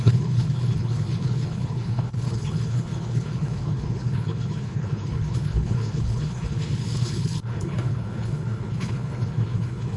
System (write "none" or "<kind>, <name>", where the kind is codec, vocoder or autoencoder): codec, HILCodec